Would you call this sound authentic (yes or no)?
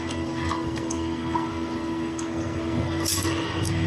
no